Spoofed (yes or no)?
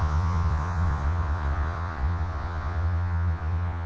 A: yes